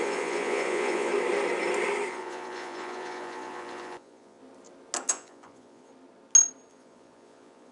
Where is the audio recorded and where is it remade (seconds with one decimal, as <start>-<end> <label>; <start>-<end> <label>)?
0.0-1.1 remade; 1.1-2.1 recorded; 2.1-4.4 remade; 4.4-5.1 recorded; 5.1-5.9 remade; 5.9-6.7 recorded; 6.7-7.7 remade